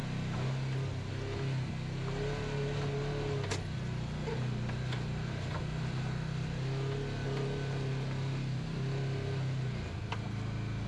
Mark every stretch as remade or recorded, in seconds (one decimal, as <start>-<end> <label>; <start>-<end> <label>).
0.0-10.9 recorded